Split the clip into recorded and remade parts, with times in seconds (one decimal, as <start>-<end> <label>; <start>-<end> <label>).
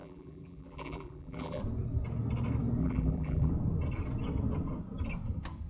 0.0-1.6 remade; 1.6-2.8 recorded; 2.8-3.5 remade; 3.5-5.7 recorded